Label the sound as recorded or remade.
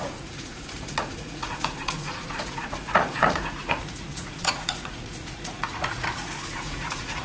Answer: remade